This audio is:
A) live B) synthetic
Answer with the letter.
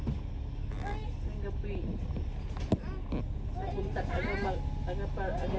A